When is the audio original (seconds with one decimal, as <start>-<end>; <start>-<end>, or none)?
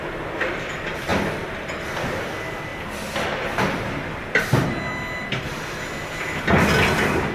0.0-7.3